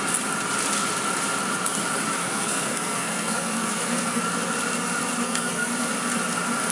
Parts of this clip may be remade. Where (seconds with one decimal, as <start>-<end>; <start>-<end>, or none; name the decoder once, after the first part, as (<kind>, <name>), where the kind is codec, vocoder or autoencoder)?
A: 2.2-4.2 (codec, SNAC); 5.2-5.7